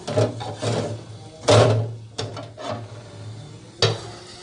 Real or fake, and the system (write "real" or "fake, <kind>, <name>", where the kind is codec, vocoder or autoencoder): real